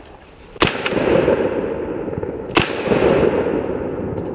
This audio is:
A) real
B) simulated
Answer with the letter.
A